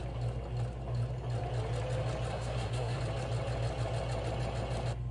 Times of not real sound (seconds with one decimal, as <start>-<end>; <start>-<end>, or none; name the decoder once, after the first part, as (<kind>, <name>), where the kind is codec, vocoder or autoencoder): 2.3-3.0 (codec, SNAC)